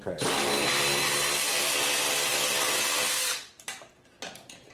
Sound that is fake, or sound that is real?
real